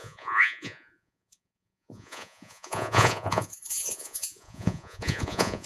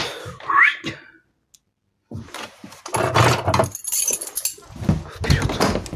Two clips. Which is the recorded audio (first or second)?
second